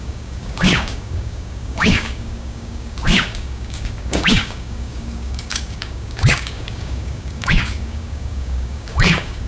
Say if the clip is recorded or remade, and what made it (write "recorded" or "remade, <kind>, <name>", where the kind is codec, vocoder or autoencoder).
remade, codec, DAC